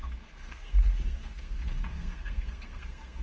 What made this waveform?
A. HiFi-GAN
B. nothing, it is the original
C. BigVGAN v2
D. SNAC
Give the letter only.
D